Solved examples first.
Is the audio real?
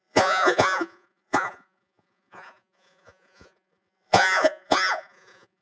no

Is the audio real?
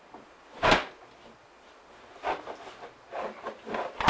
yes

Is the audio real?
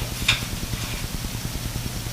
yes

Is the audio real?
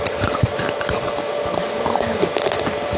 yes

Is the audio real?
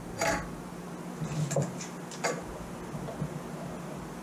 yes